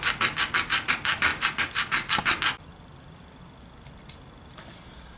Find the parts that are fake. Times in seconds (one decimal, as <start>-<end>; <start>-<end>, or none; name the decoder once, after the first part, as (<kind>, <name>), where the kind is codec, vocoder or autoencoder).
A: none